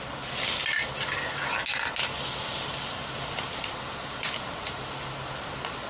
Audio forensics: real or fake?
real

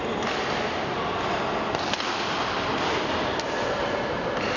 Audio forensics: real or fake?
real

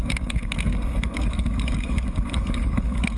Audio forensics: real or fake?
fake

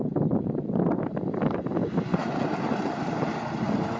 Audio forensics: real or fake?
real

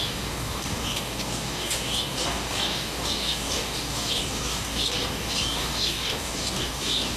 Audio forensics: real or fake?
fake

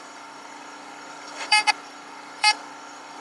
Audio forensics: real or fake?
fake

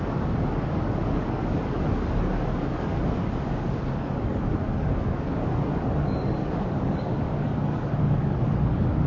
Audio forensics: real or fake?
fake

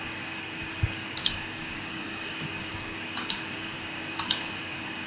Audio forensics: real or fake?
fake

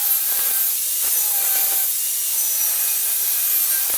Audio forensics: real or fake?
real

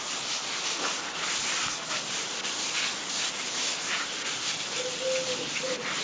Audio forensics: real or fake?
real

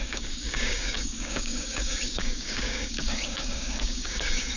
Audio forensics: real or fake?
fake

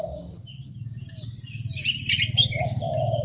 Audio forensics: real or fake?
real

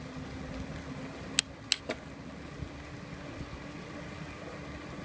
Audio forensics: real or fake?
real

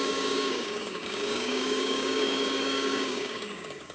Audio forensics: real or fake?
fake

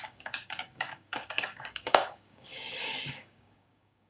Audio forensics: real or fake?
fake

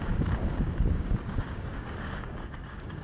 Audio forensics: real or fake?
fake